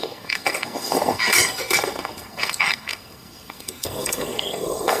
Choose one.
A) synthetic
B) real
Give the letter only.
A